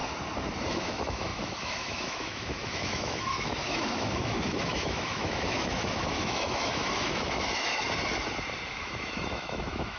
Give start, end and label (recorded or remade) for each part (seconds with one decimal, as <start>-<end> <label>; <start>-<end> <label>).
0.0-0.7 recorded; 0.7-7.7 remade; 7.7-8.7 recorded; 8.7-10.0 remade